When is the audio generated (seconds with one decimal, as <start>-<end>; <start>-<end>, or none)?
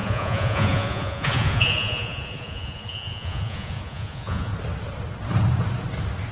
0.0-4.5